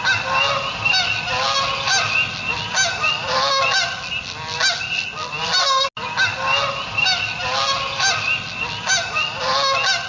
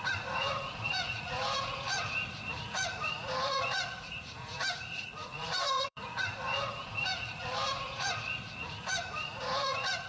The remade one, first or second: second